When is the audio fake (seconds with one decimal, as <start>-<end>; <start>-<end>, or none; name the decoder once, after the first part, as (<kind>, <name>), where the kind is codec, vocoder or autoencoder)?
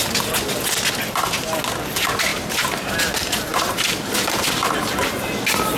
2.3-3.1 (vocoder, BigVGAN v2); 3.5-5.3